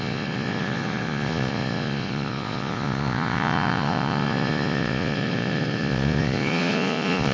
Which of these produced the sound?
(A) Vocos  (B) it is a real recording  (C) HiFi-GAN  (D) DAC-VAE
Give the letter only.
A